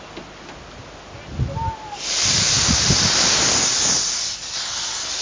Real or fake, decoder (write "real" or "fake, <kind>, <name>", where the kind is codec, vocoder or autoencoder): real